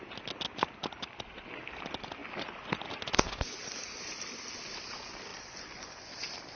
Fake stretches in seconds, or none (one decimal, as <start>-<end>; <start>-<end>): 5.3-6.1